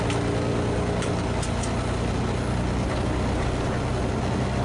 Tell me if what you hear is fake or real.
real